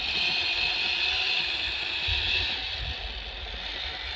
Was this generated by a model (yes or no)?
no